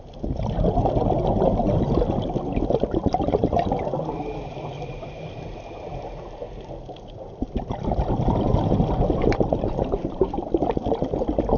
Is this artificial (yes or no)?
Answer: no